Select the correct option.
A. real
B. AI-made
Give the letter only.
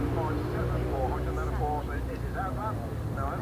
A